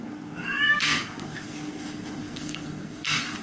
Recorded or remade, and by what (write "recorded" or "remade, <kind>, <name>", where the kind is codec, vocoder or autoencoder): remade, codec, SNAC